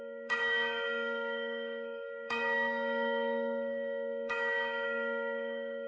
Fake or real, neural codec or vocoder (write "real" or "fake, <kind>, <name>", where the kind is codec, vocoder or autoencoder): fake, autoencoder, DAC-VAE